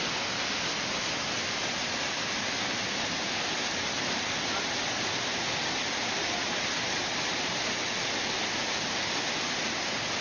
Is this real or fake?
real